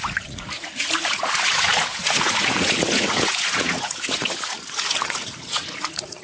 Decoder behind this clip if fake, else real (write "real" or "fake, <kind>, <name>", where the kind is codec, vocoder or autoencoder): fake, vocoder, Vocos